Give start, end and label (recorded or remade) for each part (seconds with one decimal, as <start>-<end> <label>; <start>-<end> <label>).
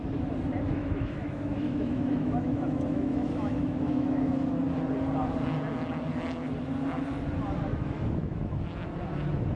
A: 0.0-0.8 recorded; 0.8-4.5 remade; 4.5-7.7 recorded; 7.7-8.6 remade; 8.6-9.6 recorded